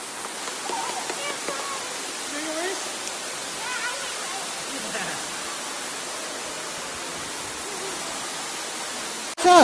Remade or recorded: recorded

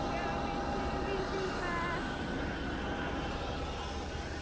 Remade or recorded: recorded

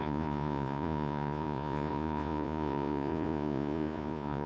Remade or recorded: remade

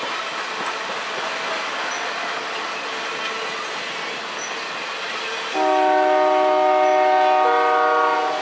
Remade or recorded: recorded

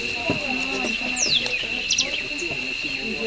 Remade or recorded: recorded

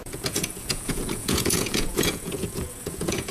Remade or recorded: remade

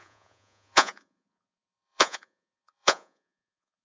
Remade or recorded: remade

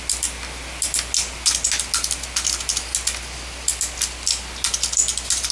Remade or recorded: recorded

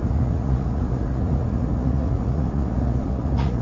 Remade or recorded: remade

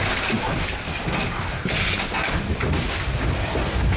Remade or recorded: recorded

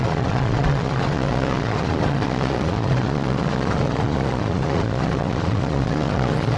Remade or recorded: remade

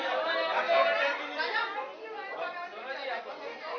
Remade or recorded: recorded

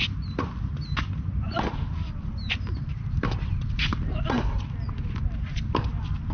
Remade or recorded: recorded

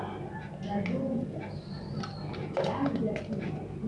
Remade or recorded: recorded